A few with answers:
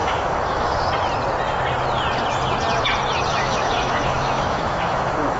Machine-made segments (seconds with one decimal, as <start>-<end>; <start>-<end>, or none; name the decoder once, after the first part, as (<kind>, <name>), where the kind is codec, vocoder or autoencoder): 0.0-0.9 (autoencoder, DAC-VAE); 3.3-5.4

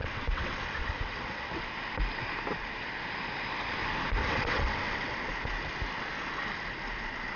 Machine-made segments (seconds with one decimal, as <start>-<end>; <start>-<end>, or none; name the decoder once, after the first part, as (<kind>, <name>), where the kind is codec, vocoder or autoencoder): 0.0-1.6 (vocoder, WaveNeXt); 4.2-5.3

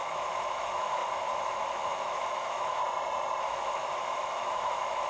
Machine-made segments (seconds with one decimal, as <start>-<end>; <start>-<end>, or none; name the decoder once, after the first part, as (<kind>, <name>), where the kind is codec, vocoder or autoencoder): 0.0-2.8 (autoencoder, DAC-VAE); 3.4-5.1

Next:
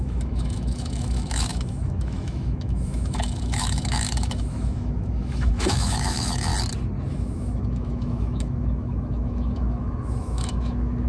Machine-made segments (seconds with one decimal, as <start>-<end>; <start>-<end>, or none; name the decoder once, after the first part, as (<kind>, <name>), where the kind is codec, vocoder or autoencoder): 0.0-6.5 (autoencoder, DAC-VAE); 7.1-11.1

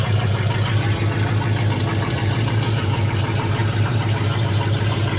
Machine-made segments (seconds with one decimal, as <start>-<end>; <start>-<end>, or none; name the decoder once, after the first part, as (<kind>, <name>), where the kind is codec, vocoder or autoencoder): 0.0-1.0 (vocoder, BigVGAN v2); 1.9-5.2